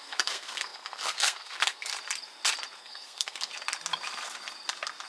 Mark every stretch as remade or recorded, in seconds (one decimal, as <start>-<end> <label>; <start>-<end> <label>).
0.0-1.9 remade; 1.9-2.8 recorded; 2.8-3.5 remade; 3.5-5.1 recorded